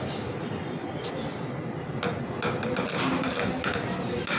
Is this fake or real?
real